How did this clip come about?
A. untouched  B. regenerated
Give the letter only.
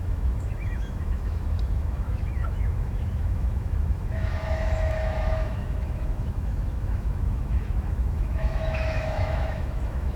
B